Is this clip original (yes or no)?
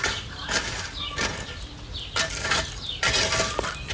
yes